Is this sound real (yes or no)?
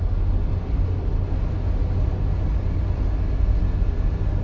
yes